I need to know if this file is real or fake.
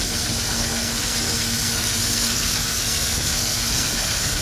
fake